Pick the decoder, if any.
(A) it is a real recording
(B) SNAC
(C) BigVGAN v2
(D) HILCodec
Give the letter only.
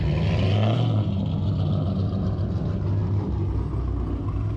A